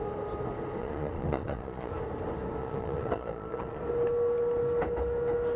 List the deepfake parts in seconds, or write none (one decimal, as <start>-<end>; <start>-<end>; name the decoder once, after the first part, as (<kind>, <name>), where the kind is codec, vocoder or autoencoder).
0.8-1.9 (vocoder, Vocos); 2.6-3.8